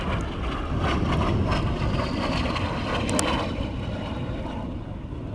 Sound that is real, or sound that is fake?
real